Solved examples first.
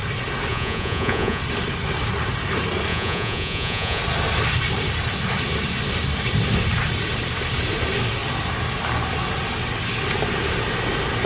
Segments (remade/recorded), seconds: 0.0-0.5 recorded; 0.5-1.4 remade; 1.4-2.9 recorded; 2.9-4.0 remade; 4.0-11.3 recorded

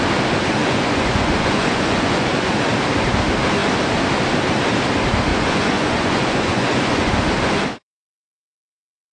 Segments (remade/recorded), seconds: 0.0-0.6 recorded; 0.6-2.5 remade; 2.5-5.3 recorded; 5.3-7.1 remade; 7.1-9.1 recorded

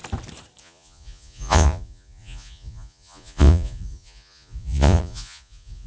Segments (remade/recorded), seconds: 0.0-0.6 recorded; 0.6-5.9 remade

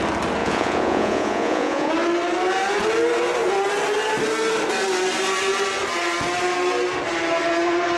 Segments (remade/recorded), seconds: 0.0-0.4 recorded; 0.4-1.9 remade; 1.9-8.0 recorded

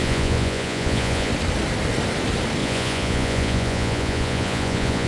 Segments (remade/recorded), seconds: 0.0-1.3 remade; 1.3-2.6 recorded; 2.6-5.1 remade

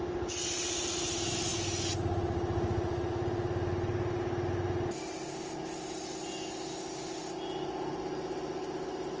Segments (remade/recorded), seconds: 0.0-9.2 recorded

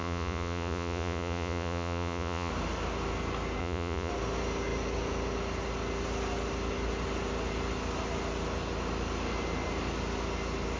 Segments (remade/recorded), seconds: 0.0-2.5 remade; 2.5-3.6 recorded; 3.6-4.1 remade; 4.1-10.8 recorded